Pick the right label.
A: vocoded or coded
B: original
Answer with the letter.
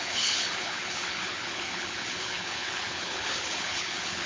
A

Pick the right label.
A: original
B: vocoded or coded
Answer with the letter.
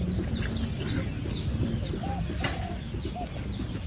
A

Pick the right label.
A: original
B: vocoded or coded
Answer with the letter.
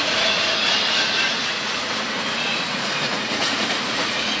B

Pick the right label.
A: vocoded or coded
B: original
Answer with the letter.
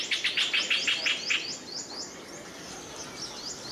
B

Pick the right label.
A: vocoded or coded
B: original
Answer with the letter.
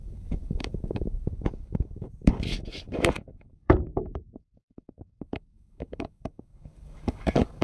A